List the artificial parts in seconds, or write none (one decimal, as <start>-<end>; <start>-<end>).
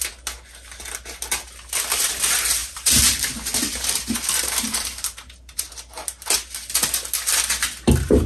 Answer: 2.6-5.7